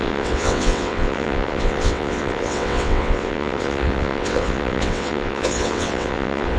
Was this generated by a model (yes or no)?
yes